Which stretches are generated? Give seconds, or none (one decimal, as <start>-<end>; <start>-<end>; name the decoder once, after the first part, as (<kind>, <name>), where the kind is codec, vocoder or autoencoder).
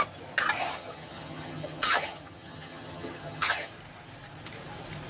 0.6-3.7 (vocoder, HiFi-GAN)